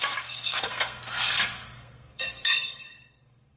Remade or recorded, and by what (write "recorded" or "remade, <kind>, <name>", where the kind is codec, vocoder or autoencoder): remade, codec, SNAC